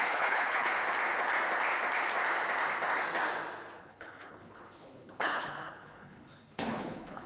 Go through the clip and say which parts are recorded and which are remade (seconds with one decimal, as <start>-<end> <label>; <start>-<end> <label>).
0.0-0.7 remade; 0.7-3.8 recorded; 3.8-7.3 remade